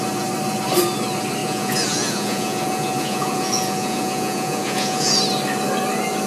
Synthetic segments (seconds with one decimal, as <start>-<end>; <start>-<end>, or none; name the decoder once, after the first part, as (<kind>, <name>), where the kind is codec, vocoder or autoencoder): 1.4-5.2 (vocoder, Vocos)